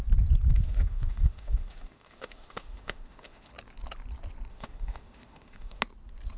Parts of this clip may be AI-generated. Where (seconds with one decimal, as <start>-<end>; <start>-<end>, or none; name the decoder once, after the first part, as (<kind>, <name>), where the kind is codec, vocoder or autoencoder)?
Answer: 0.5-3.5 (autoencoder, DAC-VAE); 4.5-5.8